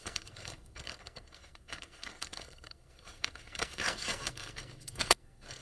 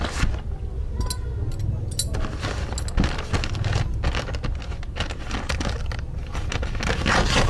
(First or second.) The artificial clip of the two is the first